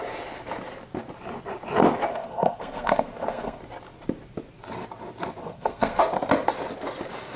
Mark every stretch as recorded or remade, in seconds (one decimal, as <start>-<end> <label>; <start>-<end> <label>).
0.0-2.1 recorded; 2.1-3.6 remade; 3.6-5.4 recorded; 5.4-6.0 remade; 6.0-7.4 recorded